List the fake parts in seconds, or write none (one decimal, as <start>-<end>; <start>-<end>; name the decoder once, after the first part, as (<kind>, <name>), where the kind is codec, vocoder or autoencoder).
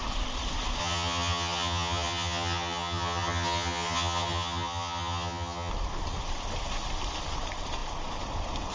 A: 0.8-5.7 (vocoder, HiFi-GAN)